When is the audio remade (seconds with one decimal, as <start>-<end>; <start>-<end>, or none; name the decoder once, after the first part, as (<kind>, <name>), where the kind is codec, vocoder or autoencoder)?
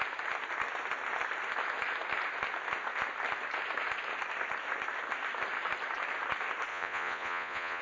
6.7-7.8 (vocoder, Vocos)